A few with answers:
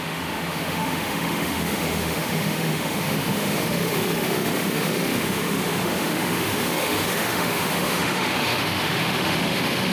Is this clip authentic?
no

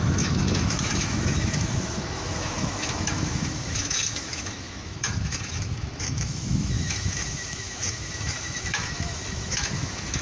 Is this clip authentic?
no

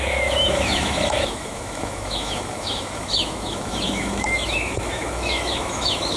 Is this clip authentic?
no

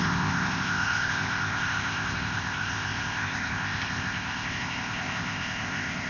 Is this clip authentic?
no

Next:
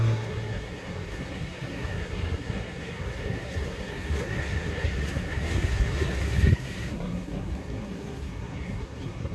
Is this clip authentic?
no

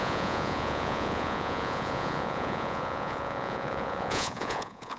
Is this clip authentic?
no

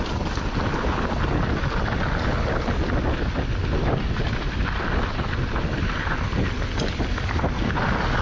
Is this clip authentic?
yes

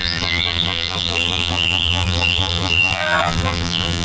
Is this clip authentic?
no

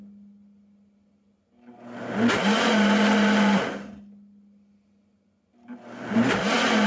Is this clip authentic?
yes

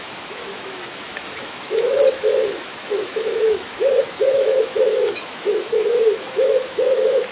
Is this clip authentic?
no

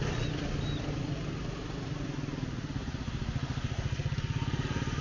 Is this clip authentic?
yes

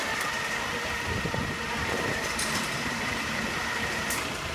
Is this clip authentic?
no